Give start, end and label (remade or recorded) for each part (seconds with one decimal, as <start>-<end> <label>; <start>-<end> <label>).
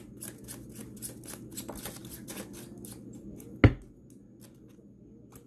0.0-5.5 recorded